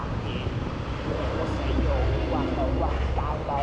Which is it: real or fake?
real